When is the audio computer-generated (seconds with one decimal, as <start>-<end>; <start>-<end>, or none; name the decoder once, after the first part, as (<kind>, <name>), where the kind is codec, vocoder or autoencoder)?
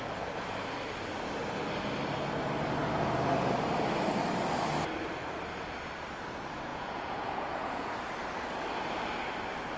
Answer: 6.7-7.9 (vocoder, Vocos)